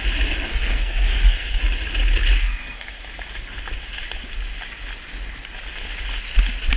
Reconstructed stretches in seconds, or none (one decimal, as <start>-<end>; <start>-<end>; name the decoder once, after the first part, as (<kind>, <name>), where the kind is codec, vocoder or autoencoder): 0.5-1.6 (codec, SNAC); 2.4-3.0